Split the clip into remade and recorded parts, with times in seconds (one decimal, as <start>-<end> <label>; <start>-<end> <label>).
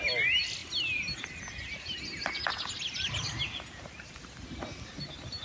0.0-5.4 recorded